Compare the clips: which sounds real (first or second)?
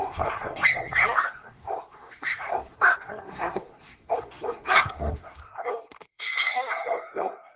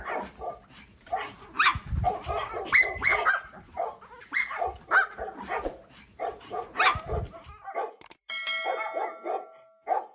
second